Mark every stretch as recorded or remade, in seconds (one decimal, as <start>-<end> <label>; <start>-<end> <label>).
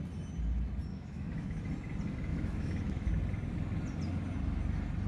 0.0-0.9 recorded; 0.9-1.6 remade; 1.6-2.3 recorded; 2.3-3.1 remade; 3.1-5.1 recorded